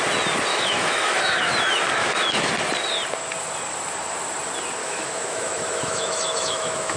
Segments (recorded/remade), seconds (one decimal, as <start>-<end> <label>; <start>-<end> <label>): 0.0-0.5 recorded; 0.5-1.5 remade; 1.5-2.0 recorded; 2.0-2.5 remade; 2.5-4.8 recorded; 4.8-7.0 remade